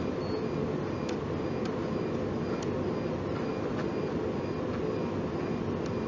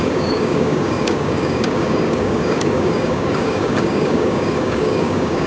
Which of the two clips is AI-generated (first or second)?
second